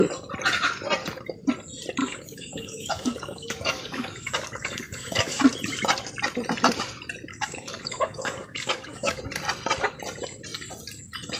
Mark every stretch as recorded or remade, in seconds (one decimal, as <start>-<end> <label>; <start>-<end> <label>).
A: 0.0-2.0 recorded; 2.0-5.4 remade; 5.4-7.3 recorded; 7.3-9.2 remade; 9.2-11.4 recorded